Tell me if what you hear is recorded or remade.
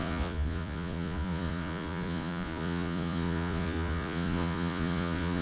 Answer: remade